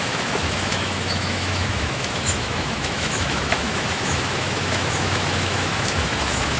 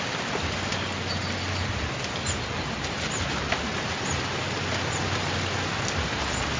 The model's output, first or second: first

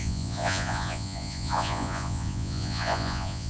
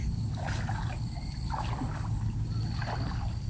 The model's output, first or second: first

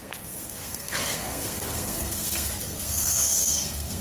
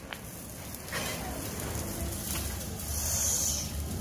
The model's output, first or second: first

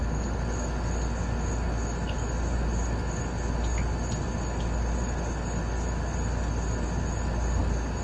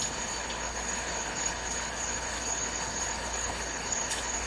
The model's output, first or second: second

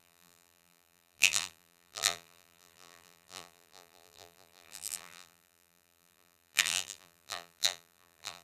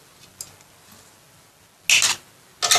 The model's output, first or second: first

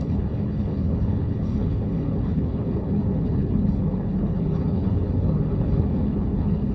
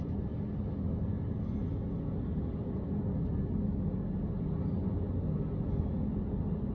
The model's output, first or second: first